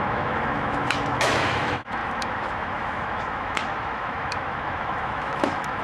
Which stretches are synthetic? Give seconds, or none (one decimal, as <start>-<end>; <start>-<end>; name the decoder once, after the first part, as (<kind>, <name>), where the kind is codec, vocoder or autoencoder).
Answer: 0.0-5.8 (autoencoder, DAC-VAE)